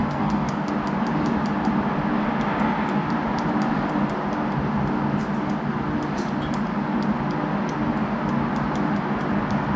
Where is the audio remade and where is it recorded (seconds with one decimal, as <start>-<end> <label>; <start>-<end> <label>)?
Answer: 0.0-0.7 remade; 0.7-9.8 recorded